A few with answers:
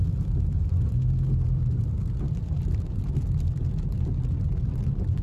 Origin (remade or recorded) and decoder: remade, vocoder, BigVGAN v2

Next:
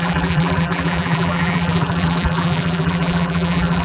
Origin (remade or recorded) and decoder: remade, vocoder, BigVGAN v2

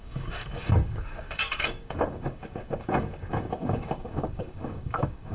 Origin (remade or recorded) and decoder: remade, codec, DAC